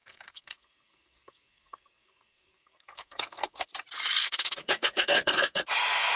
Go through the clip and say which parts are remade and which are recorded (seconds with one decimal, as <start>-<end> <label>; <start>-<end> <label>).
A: 0.0-3.7 remade; 3.7-4.2 recorded; 4.2-5.7 remade; 5.7-6.2 recorded